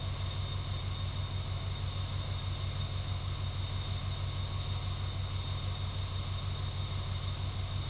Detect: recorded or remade recorded